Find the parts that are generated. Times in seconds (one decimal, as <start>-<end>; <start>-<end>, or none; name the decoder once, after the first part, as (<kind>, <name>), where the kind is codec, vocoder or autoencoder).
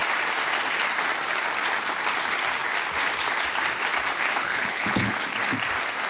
4.4-5.1 (codec, HILCodec)